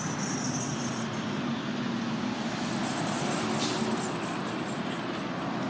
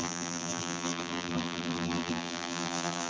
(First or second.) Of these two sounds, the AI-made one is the second